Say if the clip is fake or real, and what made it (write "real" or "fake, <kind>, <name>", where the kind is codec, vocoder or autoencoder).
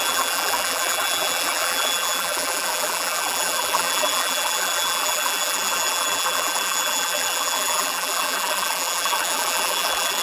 fake, vocoder, BigVGAN v2